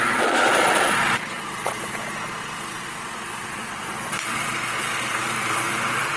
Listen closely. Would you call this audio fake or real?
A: fake